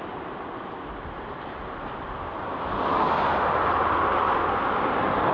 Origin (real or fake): real